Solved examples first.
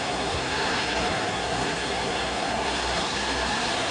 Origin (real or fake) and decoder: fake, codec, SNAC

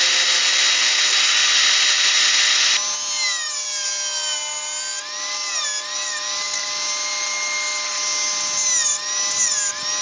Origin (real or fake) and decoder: real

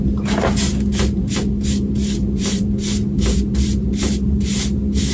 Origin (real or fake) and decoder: real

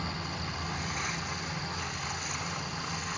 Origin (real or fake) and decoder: real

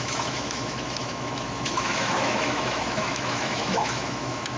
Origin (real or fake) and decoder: fake, autoencoder, DAC-VAE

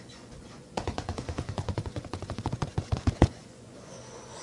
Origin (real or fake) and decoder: fake, vocoder, Vocos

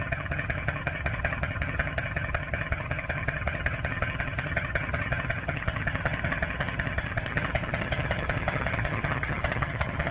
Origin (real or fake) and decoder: fake, vocoder, HiFi-GAN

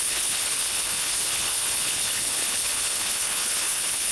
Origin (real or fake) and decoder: fake, codec, HILCodec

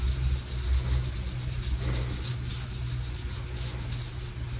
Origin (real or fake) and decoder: real